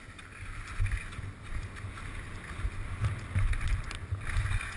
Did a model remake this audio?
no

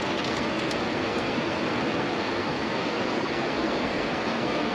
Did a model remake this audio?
yes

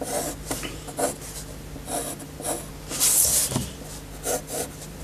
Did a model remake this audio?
no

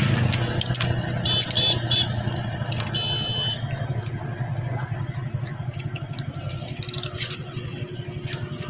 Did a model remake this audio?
no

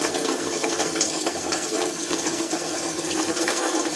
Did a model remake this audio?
yes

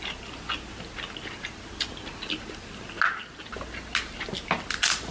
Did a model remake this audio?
no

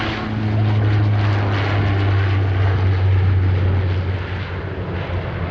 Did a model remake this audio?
no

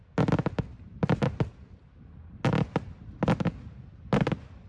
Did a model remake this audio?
no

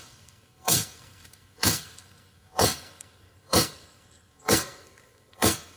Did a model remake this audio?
yes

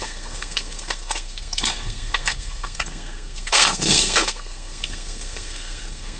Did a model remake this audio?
yes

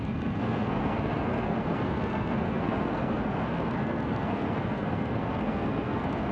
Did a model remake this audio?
yes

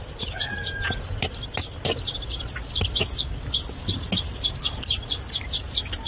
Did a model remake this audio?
no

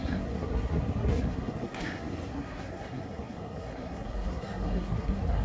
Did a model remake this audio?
yes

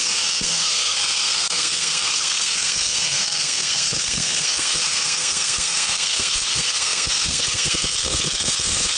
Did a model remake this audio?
yes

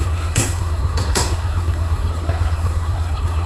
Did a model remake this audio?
yes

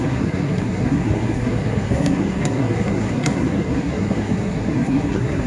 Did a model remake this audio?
yes